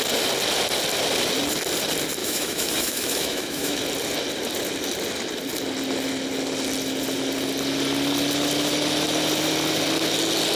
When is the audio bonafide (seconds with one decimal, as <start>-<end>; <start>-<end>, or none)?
0.0-2.2; 3.8-10.6